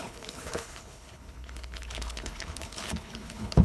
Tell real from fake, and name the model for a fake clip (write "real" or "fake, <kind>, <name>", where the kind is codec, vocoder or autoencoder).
fake, codec, HILCodec